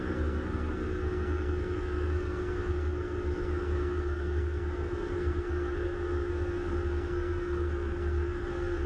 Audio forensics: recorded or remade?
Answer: remade